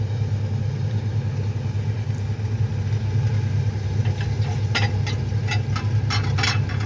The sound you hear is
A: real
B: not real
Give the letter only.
A